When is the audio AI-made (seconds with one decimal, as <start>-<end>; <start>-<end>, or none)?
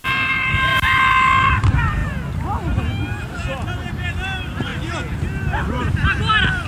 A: 0.0-0.7; 1.5-2.0; 3.9-4.7; 5.8-6.7